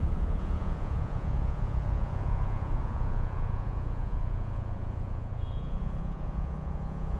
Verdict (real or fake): fake